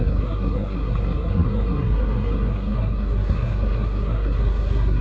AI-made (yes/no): yes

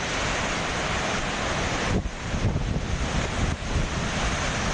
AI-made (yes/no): no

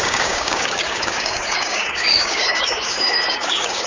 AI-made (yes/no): yes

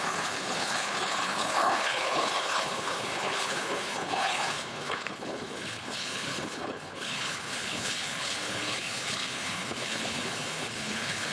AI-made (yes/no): yes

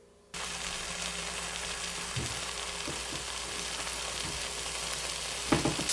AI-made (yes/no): no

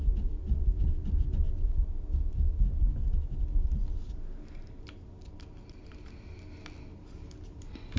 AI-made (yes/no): no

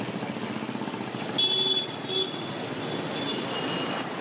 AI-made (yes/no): no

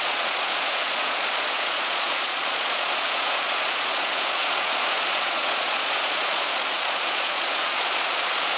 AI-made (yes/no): yes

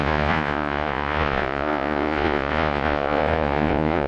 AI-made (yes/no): yes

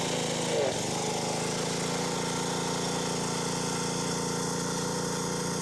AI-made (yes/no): no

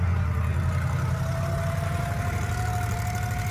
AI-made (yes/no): no